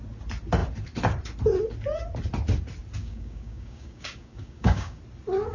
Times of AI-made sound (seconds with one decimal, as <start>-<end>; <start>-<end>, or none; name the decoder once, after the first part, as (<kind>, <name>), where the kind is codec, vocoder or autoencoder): 3.0-5.0 (codec, DAC)